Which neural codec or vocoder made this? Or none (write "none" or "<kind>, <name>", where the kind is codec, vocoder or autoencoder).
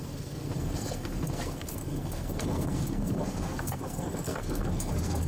codec, SNAC